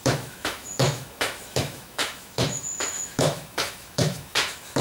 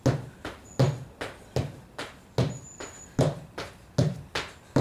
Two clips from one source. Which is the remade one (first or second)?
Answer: first